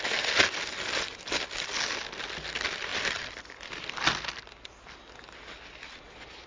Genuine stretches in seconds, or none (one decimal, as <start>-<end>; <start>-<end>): 0.0-6.5

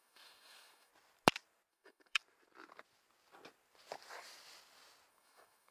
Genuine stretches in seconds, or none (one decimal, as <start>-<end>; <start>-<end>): 0.9-1.7; 2.2-5.1

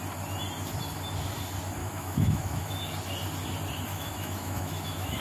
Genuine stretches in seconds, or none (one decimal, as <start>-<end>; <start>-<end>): 0.0-1.8; 2.8-3.9

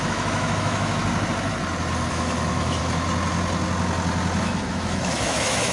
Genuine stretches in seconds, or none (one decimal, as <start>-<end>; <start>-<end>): 1.0-2.1; 2.8-4.4

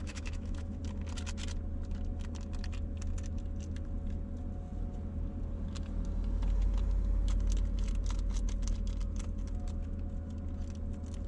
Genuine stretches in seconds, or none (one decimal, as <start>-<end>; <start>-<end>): 0.8-11.3

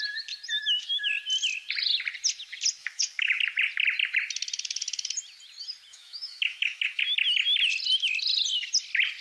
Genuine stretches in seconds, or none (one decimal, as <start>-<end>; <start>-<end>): 0.0-0.6; 1.1-2.8; 3.4-5.9; 7.0-9.2

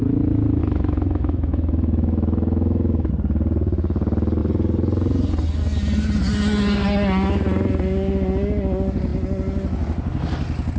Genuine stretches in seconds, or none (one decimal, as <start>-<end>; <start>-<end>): 0.0-0.6; 3.1-10.8